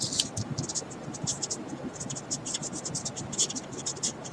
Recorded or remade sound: recorded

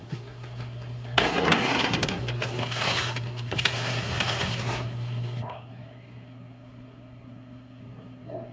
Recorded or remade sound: remade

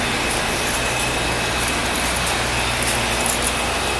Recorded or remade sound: recorded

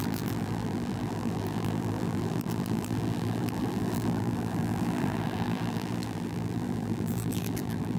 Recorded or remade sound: remade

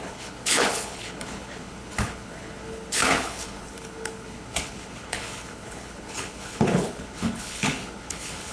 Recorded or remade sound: remade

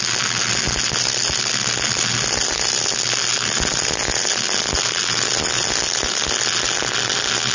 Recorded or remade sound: recorded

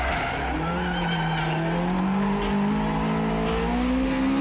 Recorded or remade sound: recorded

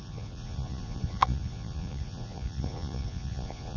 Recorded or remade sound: remade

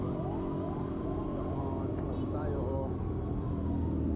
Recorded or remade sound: recorded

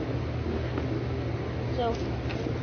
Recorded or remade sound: recorded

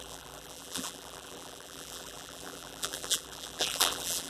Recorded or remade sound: remade